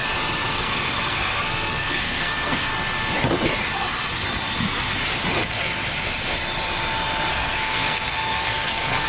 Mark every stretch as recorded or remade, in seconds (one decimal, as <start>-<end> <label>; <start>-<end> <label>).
0.0-0.5 recorded; 0.5-2.7 remade; 2.7-7.3 recorded; 7.3-9.1 remade